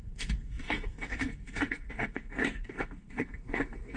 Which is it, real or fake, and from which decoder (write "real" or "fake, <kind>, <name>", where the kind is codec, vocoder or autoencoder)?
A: fake, codec, SNAC